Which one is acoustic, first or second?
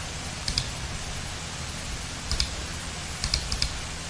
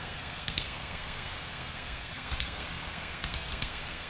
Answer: first